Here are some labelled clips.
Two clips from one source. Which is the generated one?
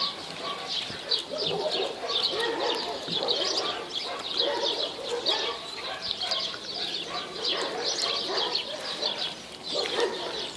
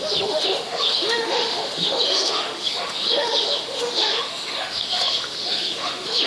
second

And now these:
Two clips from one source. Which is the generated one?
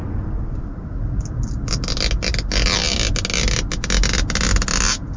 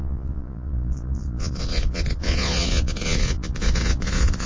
second